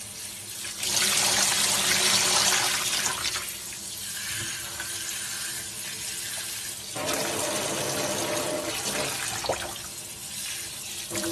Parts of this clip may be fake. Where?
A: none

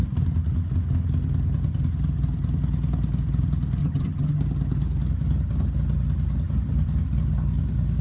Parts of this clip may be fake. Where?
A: 3.8-4.4 (vocoder, HiFi-GAN)

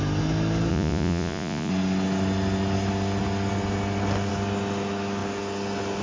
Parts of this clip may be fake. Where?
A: 0.7-1.7 (vocoder, Vocos)

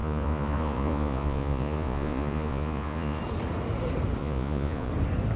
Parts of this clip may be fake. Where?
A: 0.0-3.2 (vocoder, Vocos); 4.2-4.9